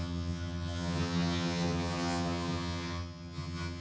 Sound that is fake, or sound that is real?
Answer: fake